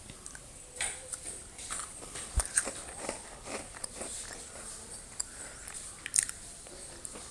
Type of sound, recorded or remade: remade